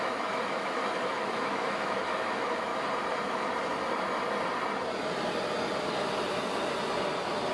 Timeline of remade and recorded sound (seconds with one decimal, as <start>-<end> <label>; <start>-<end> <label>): 0.0-2.7 remade; 2.7-7.5 recorded